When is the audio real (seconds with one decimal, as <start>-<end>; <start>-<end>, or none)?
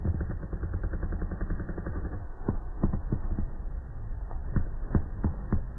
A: 0.0-1.9; 3.3-5.8